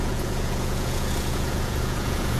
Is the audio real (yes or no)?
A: no